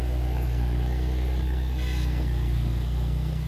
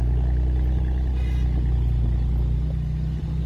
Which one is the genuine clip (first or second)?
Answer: second